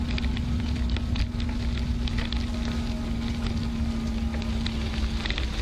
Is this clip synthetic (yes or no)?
no